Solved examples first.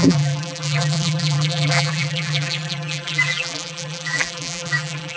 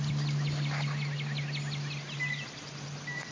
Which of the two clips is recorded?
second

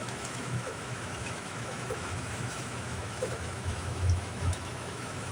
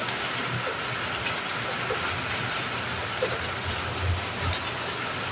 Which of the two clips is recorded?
second